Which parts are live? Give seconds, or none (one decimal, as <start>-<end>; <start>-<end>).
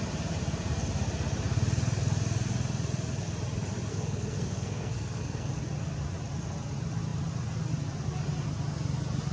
0.0-3.9; 5.5-9.3